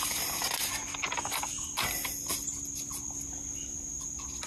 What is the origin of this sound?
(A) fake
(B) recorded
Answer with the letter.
B